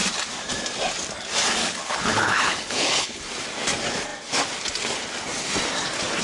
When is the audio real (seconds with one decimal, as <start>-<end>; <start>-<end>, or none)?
0.0-1.6; 3.2-6.2